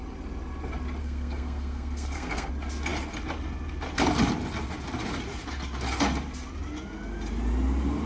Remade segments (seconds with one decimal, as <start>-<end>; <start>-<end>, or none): 1.0-2.5

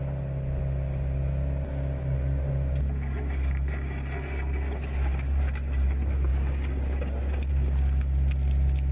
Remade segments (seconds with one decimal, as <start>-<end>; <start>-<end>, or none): none